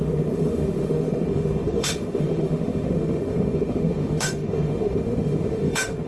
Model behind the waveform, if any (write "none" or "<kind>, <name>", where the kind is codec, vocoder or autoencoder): autoencoder, DAC-VAE